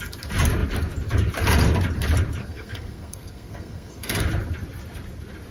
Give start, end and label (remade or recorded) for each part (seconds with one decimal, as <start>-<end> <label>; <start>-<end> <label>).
0.0-2.4 recorded; 2.4-4.2 remade; 4.2-5.5 recorded